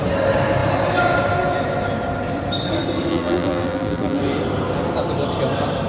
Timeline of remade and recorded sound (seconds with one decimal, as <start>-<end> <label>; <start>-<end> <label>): 0.0-3.1 recorded; 3.1-4.2 remade; 4.2-5.9 recorded